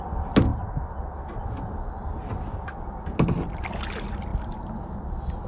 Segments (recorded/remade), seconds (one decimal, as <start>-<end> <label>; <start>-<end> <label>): 0.0-5.5 recorded